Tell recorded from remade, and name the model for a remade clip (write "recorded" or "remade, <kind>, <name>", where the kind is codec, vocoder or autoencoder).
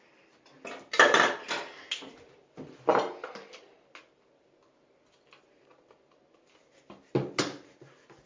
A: recorded